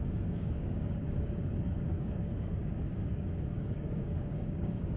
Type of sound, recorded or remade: remade